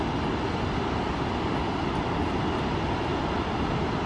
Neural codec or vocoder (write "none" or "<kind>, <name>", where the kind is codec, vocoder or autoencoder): none